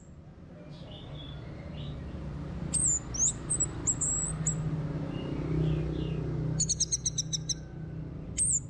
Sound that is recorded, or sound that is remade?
recorded